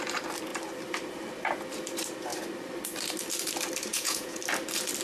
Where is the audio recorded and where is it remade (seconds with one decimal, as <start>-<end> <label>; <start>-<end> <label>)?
0.0-3.9 recorded; 3.9-4.4 remade; 4.4-5.0 recorded

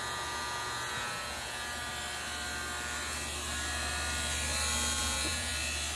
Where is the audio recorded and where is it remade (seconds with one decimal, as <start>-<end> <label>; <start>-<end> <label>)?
0.0-1.9 remade; 1.9-5.0 recorded; 5.0-5.5 remade; 5.5-6.0 recorded